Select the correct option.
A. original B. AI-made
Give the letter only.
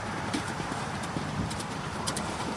B